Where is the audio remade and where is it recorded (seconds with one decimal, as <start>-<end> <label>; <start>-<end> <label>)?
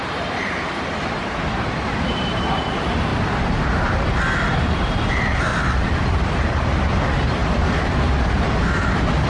0.0-3.1 remade; 3.1-5.1 recorded; 5.1-5.5 remade; 5.5-6.4 recorded; 6.4-9.3 remade